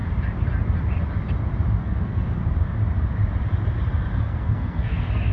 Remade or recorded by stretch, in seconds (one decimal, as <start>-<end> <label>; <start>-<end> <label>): 0.0-1.8 recorded; 1.8-2.4 remade; 2.4-4.2 recorded; 4.2-5.3 remade